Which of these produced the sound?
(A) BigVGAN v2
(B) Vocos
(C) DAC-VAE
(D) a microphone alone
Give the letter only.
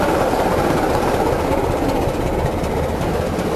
D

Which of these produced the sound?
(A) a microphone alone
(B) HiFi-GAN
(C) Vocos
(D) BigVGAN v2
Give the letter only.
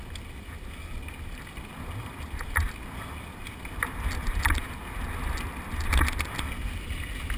A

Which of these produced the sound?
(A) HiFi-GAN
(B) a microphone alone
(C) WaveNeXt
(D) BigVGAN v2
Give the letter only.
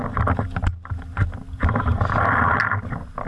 B